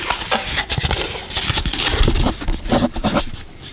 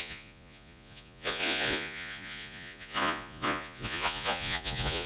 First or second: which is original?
first